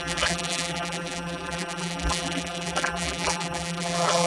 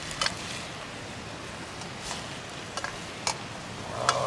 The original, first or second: second